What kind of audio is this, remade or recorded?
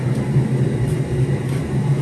remade